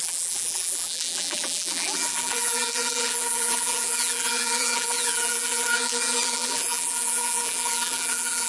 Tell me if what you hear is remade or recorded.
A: remade